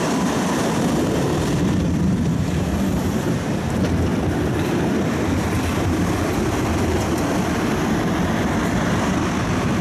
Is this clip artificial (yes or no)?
yes